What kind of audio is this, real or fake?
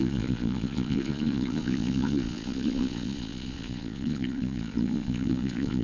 fake